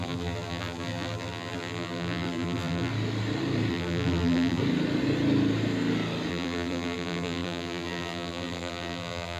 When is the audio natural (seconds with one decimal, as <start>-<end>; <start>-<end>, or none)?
2.9-3.7; 4.6-6.3